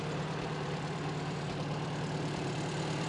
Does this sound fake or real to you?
fake